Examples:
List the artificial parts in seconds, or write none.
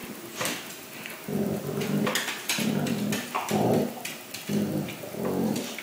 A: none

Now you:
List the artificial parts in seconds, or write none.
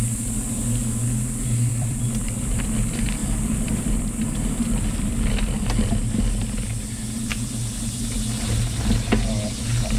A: 1.7-2.6 (vocoder, BigVGAN v2); 3.2-3.9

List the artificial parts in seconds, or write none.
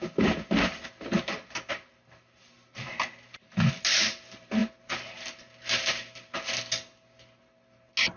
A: none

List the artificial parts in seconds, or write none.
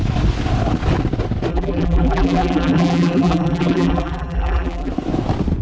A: 1.5-4.9 (vocoder, BigVGAN v2)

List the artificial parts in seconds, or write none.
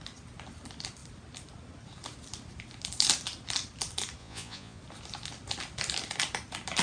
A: 4.2-4.8 (vocoder, Vocos)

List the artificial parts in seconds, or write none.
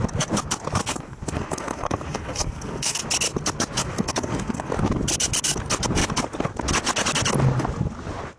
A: 0.8-3.0 (codec, SNAC); 3.8-4.7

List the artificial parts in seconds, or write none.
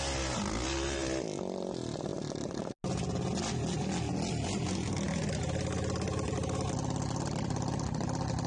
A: none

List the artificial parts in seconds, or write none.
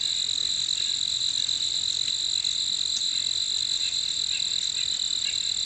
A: none